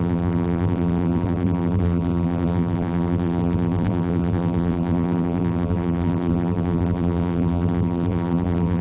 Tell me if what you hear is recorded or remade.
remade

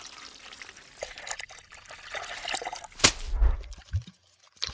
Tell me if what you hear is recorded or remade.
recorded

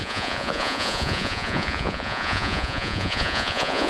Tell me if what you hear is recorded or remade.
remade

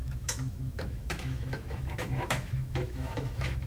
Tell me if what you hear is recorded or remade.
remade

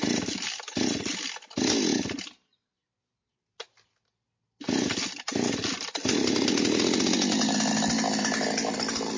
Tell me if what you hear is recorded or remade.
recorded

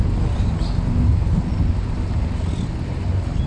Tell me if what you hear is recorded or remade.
recorded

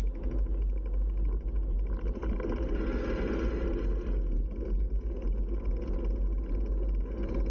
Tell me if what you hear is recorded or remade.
recorded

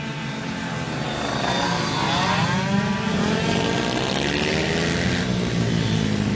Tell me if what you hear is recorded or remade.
recorded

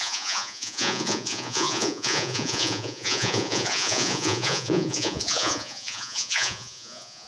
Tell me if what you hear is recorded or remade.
remade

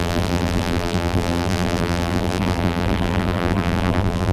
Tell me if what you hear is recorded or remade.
remade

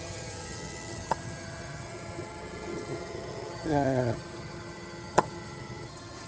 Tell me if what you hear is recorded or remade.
remade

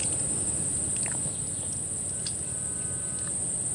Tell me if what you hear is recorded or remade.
recorded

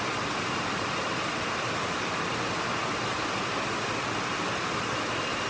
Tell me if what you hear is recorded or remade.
recorded